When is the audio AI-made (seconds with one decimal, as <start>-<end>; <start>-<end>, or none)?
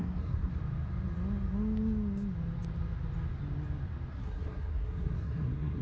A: 0.0-0.6; 4.1-5.8